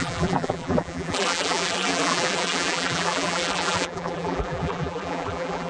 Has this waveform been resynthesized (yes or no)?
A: yes